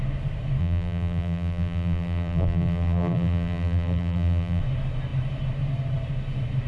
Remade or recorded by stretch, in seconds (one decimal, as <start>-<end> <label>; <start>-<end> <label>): 0.0-0.6 recorded; 0.6-4.6 remade; 4.6-6.7 recorded